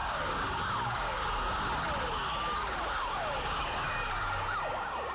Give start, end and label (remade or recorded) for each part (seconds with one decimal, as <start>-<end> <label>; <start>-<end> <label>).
0.0-1.5 remade; 1.5-2.0 recorded; 2.0-5.1 remade